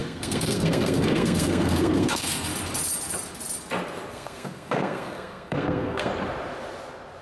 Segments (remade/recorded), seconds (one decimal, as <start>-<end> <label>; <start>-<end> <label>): 0.0-2.5 remade; 2.5-4.1 recorded; 4.1-6.1 remade; 6.1-7.2 recorded